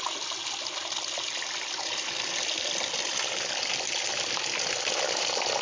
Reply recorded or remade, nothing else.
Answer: recorded